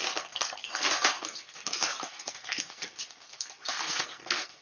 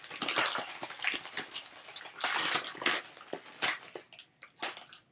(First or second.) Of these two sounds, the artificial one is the first